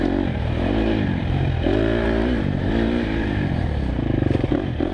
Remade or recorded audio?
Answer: remade